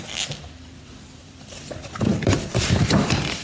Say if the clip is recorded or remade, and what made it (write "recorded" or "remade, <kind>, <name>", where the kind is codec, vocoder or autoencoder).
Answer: remade, vocoder, BigVGAN v2